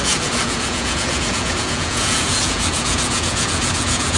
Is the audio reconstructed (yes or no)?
yes